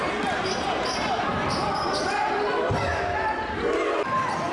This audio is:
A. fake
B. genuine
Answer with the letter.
B